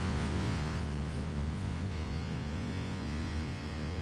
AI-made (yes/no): yes